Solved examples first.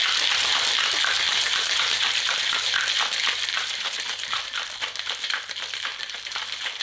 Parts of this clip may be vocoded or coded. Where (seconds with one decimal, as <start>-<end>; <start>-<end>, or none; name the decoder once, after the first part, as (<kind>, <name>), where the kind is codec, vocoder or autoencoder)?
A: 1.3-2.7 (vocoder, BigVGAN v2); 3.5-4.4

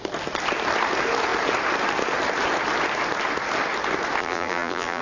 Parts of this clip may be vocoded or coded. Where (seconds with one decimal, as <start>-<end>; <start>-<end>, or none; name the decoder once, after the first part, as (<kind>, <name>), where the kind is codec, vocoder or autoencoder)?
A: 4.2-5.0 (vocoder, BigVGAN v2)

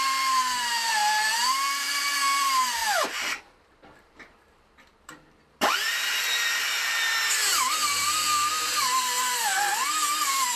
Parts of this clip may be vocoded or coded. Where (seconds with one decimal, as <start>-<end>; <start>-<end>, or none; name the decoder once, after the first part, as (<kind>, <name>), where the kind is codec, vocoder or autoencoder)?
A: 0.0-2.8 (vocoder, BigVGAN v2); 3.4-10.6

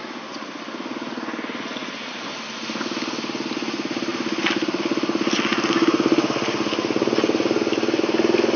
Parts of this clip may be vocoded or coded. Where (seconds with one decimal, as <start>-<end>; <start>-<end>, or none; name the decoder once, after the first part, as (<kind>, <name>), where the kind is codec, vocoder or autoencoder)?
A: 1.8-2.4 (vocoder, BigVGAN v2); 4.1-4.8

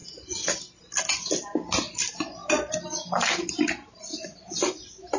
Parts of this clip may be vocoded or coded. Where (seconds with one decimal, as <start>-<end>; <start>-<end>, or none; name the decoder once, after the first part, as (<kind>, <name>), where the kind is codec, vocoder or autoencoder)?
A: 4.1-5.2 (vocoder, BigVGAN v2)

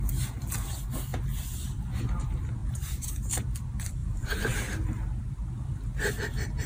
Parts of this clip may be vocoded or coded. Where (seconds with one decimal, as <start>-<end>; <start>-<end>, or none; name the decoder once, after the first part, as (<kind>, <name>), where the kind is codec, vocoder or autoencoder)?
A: 2.6-3.3 (vocoder, BigVGAN v2); 4.0-5.0

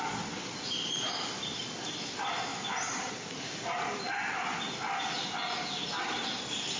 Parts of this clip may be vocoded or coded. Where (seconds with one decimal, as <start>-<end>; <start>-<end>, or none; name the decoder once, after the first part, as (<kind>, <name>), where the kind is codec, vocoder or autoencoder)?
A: 2.5-3.1 (vocoder, BigVGAN v2)